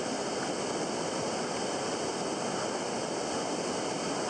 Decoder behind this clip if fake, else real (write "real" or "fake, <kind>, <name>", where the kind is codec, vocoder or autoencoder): real